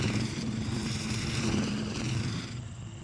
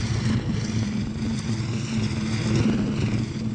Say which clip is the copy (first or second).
first